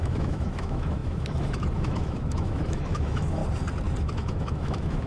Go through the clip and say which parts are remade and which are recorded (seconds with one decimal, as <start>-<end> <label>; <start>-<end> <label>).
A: 0.0-3.4 remade; 3.4-4.0 recorded; 4.0-5.1 remade